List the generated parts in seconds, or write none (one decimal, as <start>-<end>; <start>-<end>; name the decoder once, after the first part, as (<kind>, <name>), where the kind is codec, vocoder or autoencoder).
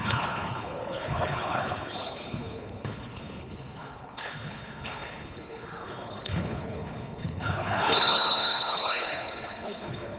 0.0-10.2 (codec, HILCodec)